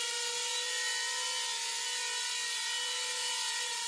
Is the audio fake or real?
real